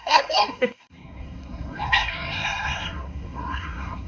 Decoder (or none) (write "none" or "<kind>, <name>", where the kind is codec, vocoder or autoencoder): codec, SNAC